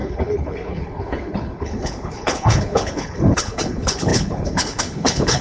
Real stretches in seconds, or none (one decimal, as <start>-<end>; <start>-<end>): none